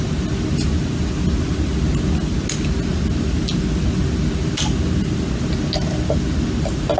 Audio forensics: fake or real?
real